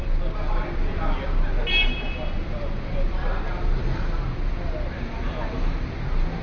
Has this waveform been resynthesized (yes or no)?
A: no